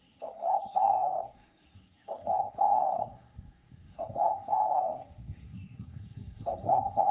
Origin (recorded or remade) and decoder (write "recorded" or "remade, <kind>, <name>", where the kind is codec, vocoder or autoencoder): remade, codec, SNAC